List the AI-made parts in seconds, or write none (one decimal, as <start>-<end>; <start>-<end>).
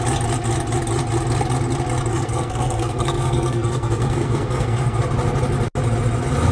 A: 2.1-5.0